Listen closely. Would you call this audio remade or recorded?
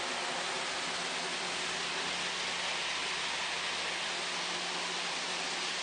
recorded